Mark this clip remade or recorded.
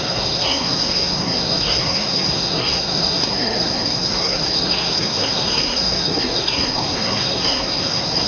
remade